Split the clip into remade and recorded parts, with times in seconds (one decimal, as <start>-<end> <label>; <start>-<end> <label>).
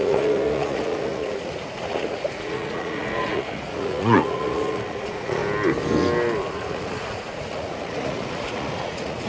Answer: 0.0-5.4 remade; 5.4-6.5 recorded; 6.5-9.3 remade